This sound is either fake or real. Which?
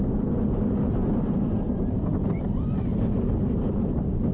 real